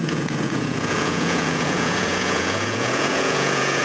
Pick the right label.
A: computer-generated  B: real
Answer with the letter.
A